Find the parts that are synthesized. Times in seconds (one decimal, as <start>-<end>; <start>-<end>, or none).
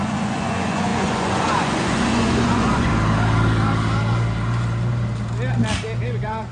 0.0-2.9; 6.0-6.5